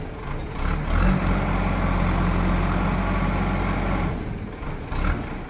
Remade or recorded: recorded